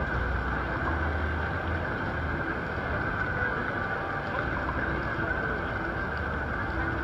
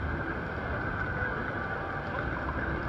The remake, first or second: second